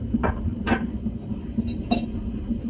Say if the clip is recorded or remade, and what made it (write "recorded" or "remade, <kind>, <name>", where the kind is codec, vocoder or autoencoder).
recorded